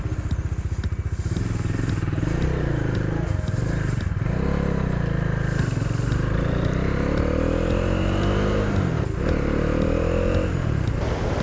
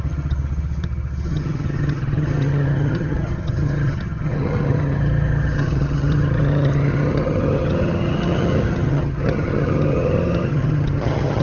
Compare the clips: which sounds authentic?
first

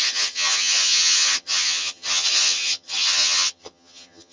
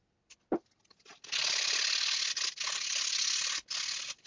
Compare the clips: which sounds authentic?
second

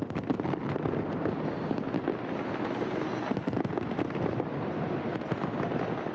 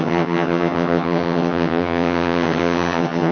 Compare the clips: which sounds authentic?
first